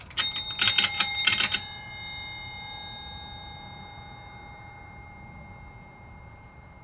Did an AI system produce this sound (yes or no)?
no